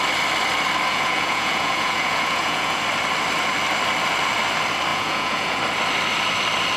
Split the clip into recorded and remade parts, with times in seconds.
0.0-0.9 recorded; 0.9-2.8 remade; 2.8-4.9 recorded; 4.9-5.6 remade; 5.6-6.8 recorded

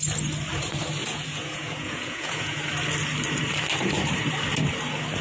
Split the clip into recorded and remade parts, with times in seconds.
0.0-1.0 recorded; 1.0-2.6 remade; 2.6-5.2 recorded

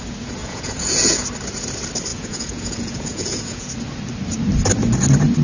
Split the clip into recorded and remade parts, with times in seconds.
0.0-0.4 recorded; 0.4-1.3 remade; 1.3-2.1 recorded; 2.1-3.7 remade; 3.7-5.4 recorded

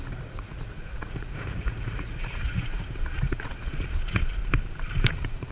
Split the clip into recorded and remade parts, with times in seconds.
0.0-4.4 remade; 4.4-5.1 recorded; 5.1-5.5 remade